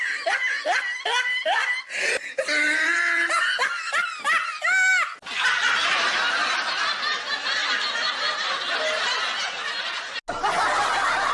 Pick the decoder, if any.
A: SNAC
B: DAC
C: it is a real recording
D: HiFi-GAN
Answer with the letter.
C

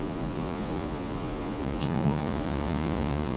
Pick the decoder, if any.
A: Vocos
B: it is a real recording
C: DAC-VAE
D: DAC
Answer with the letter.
A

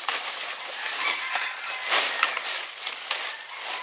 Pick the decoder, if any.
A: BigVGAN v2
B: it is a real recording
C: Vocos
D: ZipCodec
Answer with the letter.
B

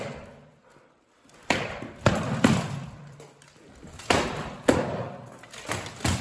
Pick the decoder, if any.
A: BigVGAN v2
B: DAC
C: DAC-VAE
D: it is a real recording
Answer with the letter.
A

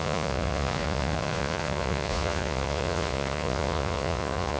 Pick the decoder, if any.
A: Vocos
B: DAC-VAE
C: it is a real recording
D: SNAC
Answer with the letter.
A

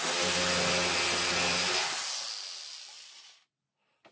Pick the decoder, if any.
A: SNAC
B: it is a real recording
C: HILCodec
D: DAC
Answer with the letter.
B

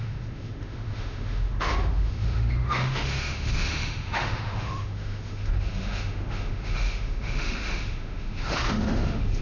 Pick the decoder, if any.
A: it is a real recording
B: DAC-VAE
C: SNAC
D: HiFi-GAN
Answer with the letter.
B